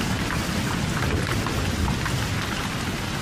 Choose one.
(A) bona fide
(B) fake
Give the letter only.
A